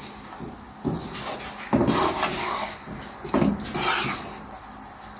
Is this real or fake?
real